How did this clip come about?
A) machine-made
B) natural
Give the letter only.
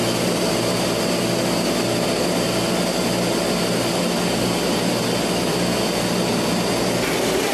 B